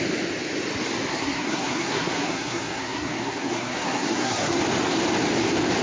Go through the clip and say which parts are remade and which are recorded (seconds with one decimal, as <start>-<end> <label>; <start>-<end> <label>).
0.0-1.1 recorded; 1.1-4.6 remade; 4.6-5.8 recorded